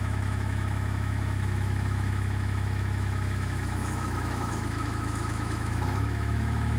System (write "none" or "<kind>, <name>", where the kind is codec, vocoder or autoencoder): autoencoder, DAC-VAE